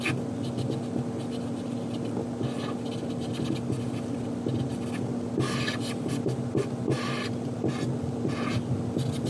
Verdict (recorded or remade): recorded